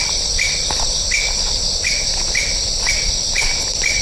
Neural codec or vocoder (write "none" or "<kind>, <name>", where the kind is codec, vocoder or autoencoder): vocoder, BigVGAN v2